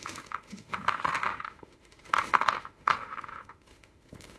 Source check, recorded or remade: remade